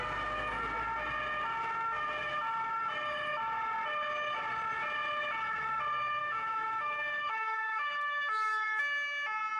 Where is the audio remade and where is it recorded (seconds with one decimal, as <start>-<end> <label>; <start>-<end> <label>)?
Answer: 0.0-6.2 recorded; 6.2-8.8 remade; 8.8-9.6 recorded